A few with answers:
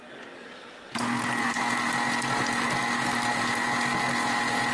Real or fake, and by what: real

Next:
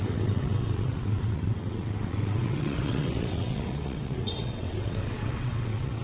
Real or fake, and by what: fake, vocoder, WaveNeXt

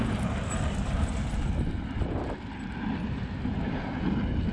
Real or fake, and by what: real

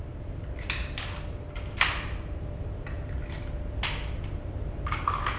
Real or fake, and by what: real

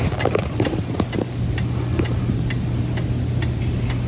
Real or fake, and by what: real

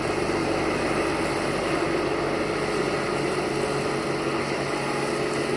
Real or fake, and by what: real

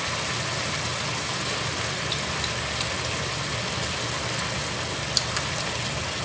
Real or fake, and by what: real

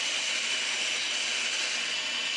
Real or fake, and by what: real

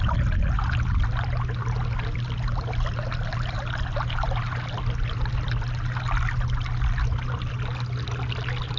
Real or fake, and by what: real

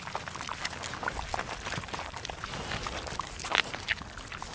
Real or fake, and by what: real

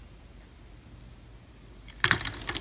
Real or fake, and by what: real